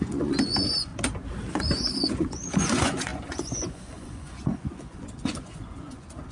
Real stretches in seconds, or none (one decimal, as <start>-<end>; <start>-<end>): 0.9-1.5